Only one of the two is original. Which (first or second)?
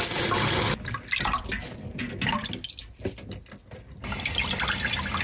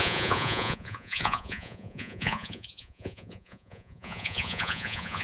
first